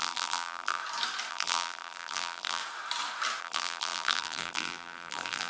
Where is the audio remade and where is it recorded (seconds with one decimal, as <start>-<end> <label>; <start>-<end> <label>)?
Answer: 0.0-0.8 remade; 0.8-1.3 recorded; 1.3-2.6 remade; 2.6-3.4 recorded; 3.4-5.5 remade